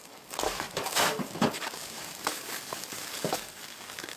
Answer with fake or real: fake